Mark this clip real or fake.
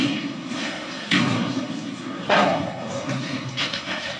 fake